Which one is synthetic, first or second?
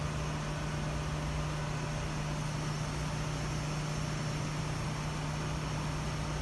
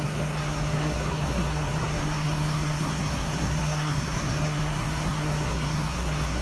second